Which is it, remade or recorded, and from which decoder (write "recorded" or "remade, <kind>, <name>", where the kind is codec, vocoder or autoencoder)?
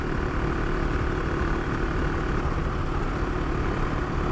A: recorded